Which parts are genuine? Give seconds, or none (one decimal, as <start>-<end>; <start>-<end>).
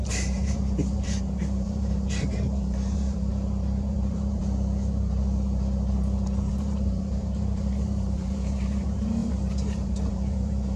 4.4-6.5